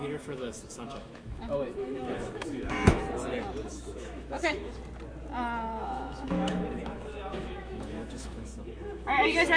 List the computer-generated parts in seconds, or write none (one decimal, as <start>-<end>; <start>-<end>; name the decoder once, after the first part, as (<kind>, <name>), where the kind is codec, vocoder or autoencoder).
0.0-3.0 (autoencoder, DAC-VAE); 3.7-4.7; 5.8-9.6